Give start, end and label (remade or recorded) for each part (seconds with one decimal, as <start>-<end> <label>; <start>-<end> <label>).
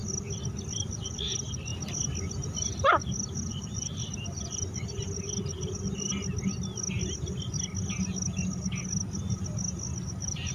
0.0-0.9 recorded; 0.9-1.7 remade; 1.7-2.9 recorded; 2.9-6.1 remade; 6.1-10.1 recorded; 10.1-10.5 remade